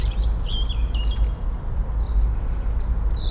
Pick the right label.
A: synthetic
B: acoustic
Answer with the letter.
B